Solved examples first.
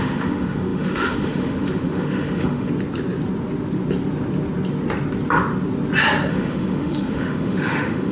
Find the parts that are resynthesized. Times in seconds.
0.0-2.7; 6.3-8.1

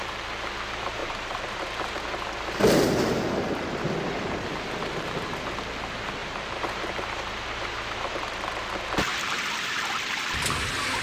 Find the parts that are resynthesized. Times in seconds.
1.0-1.9; 6.2-8.1; 9.1-9.9

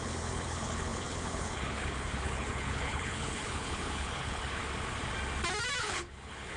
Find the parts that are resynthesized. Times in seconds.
0.0-4.6; 5.8-6.6

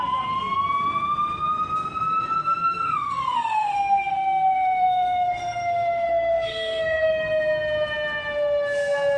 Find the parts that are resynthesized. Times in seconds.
2.4-7.1